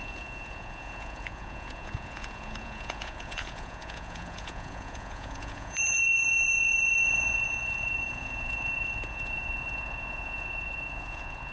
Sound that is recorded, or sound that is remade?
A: remade